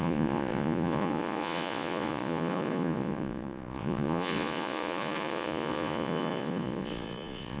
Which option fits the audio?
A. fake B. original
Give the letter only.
A